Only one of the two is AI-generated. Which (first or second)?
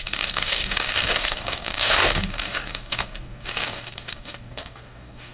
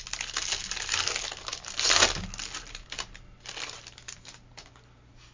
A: first